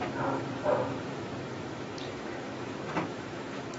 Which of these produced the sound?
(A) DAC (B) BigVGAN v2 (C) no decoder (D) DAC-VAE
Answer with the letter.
D